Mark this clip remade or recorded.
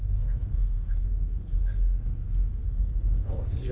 remade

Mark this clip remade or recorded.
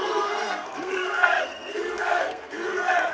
remade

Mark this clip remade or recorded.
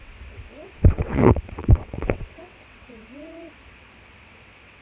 remade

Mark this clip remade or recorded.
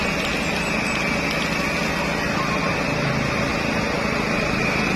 recorded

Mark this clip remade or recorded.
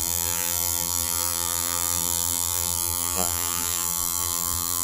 remade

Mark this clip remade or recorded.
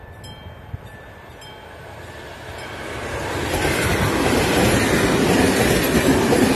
recorded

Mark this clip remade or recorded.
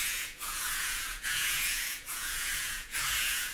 remade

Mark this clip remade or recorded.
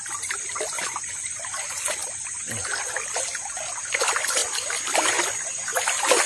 recorded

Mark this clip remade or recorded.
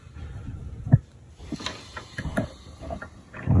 recorded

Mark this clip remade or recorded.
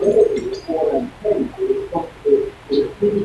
recorded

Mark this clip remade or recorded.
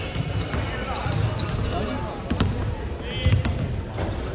recorded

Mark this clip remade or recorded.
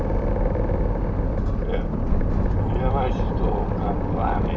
recorded